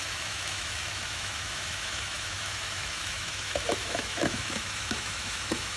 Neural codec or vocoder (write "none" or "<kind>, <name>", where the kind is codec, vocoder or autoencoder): autoencoder, DAC-VAE